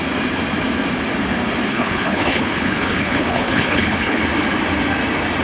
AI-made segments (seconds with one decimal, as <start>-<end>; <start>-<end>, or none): 1.7-4.2